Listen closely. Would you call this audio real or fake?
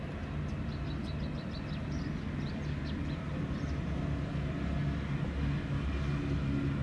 real